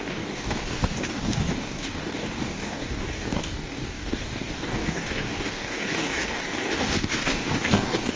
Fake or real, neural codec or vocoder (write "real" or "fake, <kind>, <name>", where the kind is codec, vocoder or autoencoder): fake, codec, DAC